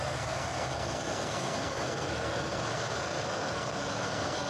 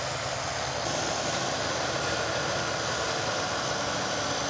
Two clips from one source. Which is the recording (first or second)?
second